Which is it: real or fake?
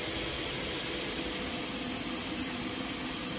real